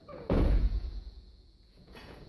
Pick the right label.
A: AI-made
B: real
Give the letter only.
A